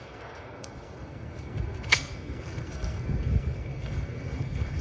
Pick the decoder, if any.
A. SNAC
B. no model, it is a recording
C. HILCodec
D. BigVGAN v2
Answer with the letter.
A